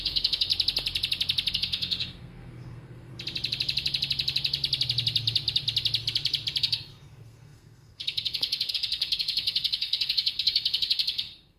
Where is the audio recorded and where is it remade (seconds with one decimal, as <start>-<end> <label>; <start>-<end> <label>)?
0.0-0.5 remade; 0.5-1.5 recorded; 1.5-3.1 remade; 3.1-6.6 recorded; 6.6-11.6 remade